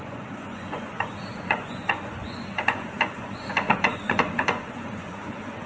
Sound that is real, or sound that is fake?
fake